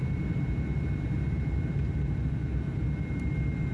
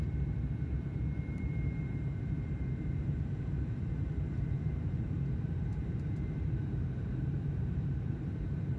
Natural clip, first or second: first